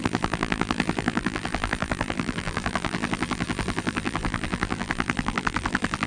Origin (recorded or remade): remade